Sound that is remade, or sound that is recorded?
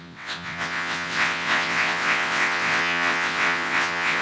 remade